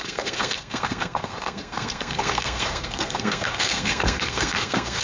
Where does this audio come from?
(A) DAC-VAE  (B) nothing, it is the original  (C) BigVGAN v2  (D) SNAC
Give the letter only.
D